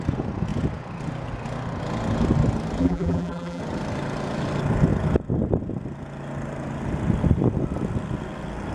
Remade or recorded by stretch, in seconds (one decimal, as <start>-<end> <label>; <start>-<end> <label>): 0.0-2.8 recorded; 2.8-3.6 remade; 3.6-8.7 recorded